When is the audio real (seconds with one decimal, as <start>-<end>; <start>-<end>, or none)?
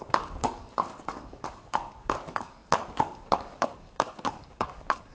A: none